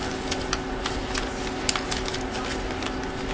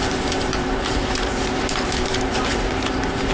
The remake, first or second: second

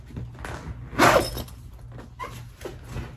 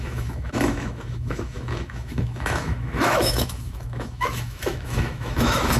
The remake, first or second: second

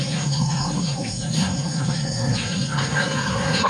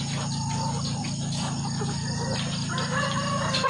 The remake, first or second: first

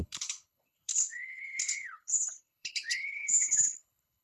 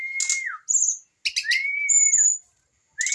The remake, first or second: first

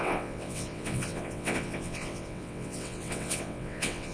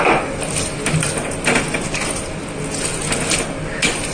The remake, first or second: first